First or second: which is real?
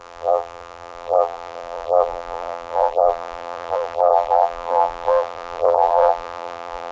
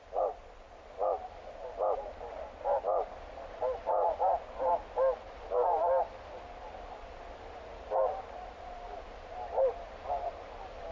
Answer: second